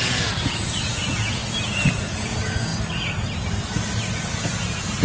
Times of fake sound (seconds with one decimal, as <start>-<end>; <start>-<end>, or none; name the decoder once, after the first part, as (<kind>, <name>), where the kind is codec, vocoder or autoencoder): 0.0-2.7 (vocoder, Vocos); 4.3-5.0

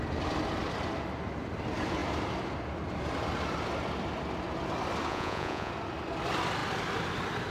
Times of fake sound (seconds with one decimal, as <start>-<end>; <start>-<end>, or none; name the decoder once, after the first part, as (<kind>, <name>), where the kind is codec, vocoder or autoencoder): 5.1-5.7 (vocoder, Vocos)

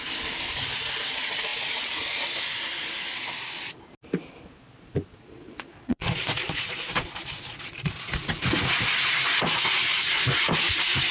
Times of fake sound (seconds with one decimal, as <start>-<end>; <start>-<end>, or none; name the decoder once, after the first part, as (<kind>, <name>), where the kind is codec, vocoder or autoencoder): 5.1-8.1 (vocoder, Vocos)

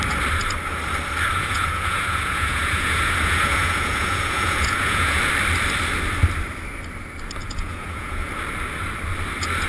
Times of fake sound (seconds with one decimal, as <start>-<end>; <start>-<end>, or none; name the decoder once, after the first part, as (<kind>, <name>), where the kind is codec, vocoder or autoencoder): 1.4-5.2 (vocoder, Vocos); 7.4-8.3

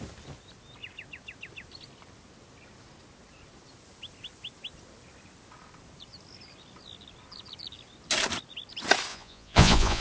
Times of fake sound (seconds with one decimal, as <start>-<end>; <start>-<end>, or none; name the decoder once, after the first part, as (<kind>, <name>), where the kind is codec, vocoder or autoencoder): 9.1-10.0 (vocoder, Vocos)